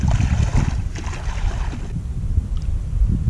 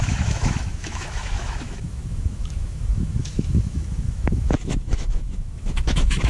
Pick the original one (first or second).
first